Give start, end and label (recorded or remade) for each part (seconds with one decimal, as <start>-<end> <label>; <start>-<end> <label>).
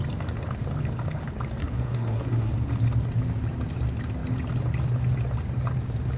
0.0-1.6 recorded; 1.6-2.5 remade; 2.5-6.2 recorded